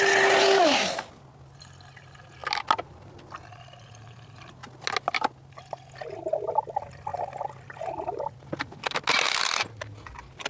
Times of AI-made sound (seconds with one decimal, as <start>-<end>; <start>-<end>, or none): none